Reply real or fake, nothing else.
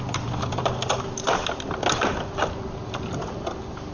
real